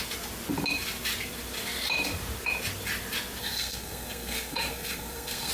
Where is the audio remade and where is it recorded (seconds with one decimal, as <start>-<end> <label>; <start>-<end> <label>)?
0.0-3.4 recorded; 3.4-5.5 remade